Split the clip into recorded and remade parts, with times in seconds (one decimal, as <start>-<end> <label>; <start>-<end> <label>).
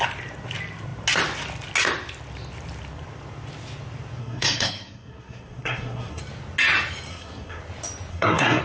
0.0-4.2 recorded; 4.2-6.2 remade; 6.2-7.1 recorded; 7.1-7.6 remade; 7.6-8.1 recorded; 8.1-8.6 remade